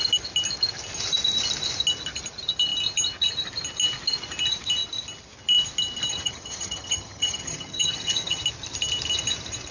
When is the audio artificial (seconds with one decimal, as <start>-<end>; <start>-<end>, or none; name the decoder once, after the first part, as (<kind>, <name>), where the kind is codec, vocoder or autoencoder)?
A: 6.1-8.4 (vocoder, HiFi-GAN)